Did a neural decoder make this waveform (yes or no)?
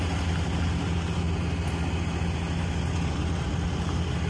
no